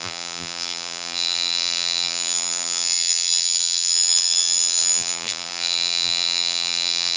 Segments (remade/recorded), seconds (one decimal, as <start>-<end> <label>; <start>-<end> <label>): 0.0-7.2 remade